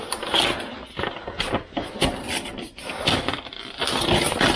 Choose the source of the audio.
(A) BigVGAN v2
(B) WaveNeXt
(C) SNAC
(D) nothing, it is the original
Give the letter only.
D